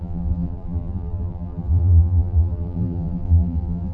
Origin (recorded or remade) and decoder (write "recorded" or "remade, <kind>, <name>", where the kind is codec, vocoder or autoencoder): remade, vocoder, BigVGAN v2